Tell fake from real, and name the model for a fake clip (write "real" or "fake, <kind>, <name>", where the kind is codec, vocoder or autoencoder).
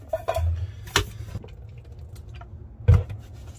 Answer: real